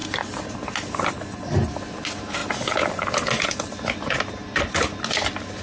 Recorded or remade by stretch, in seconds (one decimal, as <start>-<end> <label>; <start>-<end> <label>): 0.0-5.6 recorded